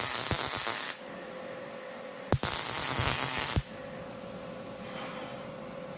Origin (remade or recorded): recorded